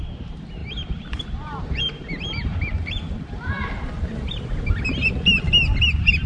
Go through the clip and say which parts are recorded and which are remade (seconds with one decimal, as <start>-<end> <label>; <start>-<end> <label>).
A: 0.0-0.6 recorded; 0.6-4.4 remade; 4.4-6.3 recorded